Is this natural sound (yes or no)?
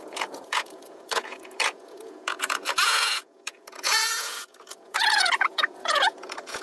no